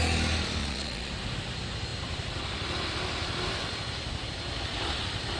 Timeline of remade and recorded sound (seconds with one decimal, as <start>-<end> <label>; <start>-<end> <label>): 0.0-0.6 recorded; 0.6-1.1 remade; 1.1-5.4 recorded